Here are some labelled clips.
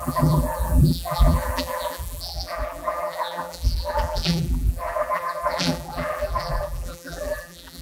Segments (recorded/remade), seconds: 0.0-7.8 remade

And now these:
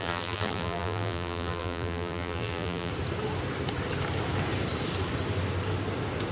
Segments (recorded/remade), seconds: 0.0-2.9 remade; 2.9-6.3 recorded

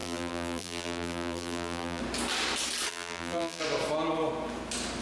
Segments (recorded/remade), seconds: 0.0-2.0 remade; 2.0-2.9 recorded; 2.9-3.6 remade; 3.6-5.0 recorded

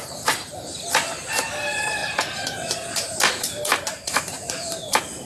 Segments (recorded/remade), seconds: 0.0-2.0 recorded; 2.0-5.3 remade